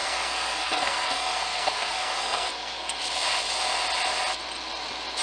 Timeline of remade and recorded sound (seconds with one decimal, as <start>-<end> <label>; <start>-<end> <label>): 0.0-3.0 remade; 3.0-5.2 recorded